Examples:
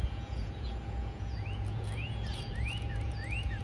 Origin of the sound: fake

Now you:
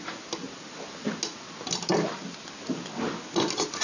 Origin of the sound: real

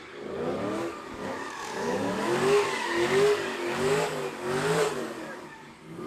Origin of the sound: fake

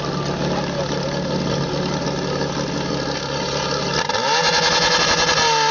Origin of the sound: real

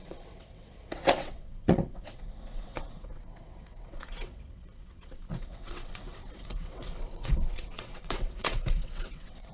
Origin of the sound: fake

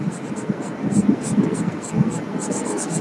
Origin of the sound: fake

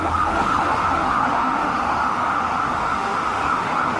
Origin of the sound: fake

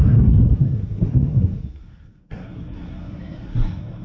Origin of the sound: fake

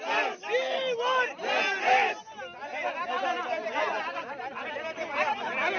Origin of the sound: real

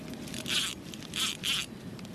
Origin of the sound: fake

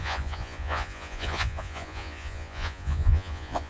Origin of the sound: fake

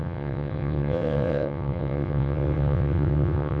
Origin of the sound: fake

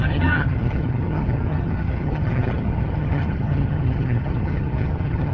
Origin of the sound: fake